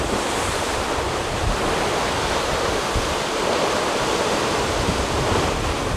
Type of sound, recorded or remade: remade